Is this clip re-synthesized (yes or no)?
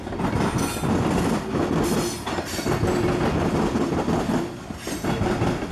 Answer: no